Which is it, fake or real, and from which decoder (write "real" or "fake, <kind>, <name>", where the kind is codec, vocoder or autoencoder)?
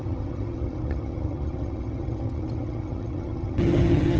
fake, vocoder, HiFi-GAN